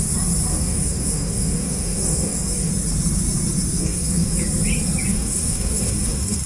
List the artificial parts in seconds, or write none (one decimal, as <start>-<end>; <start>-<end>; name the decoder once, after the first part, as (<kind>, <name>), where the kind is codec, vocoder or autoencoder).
0.5-2.7 (codec, DAC); 3.8-4.4; 5.1-6.5